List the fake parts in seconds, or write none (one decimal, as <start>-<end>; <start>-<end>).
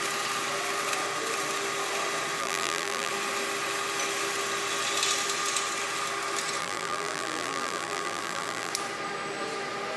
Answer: 2.4-3.1; 6.6-8.7